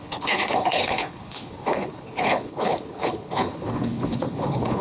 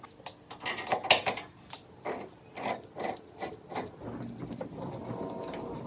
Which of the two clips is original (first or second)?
second